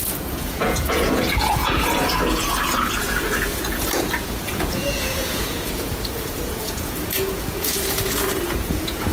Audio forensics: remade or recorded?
remade